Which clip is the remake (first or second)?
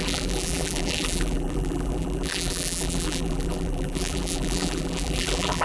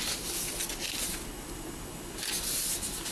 first